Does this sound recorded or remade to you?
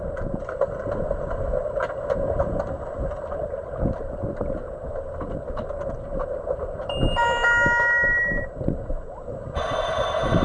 recorded